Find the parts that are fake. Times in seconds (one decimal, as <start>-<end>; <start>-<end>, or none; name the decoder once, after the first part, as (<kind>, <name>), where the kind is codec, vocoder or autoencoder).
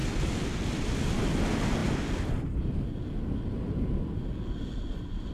none